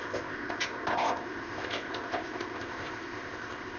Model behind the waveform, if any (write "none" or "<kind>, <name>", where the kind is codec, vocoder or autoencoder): codec, ZipCodec